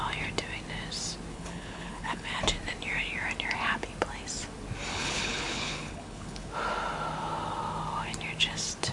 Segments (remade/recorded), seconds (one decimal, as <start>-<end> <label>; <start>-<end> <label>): 0.0-1.3 recorded; 1.3-2.4 remade; 2.4-4.9 recorded; 4.9-6.5 remade; 6.5-8.9 recorded